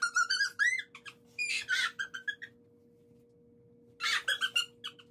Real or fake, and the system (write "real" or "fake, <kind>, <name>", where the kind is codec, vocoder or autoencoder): real